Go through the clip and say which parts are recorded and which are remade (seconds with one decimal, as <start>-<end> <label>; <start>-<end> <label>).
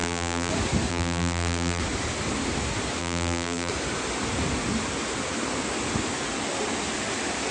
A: 0.0-0.5 remade; 0.5-0.9 recorded; 0.9-1.8 remade; 1.8-3.0 recorded; 3.0-3.7 remade; 3.7-7.5 recorded